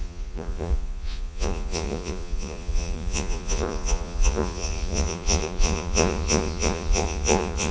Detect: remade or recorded remade